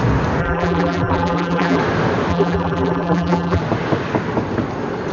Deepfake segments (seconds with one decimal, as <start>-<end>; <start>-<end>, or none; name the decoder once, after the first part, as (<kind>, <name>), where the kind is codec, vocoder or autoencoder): 0.4-1.8 (vocoder, BigVGAN v2); 2.3-3.6